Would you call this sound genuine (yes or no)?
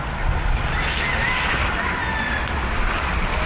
yes